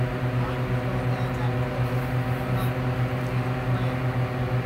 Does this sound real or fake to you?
real